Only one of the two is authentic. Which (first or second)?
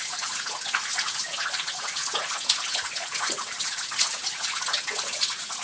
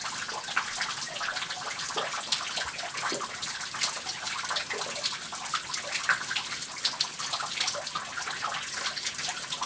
second